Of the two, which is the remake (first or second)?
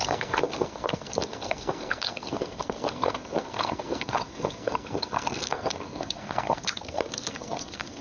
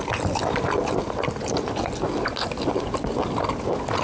first